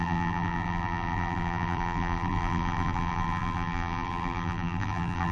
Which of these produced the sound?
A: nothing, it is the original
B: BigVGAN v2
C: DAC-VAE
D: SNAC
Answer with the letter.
B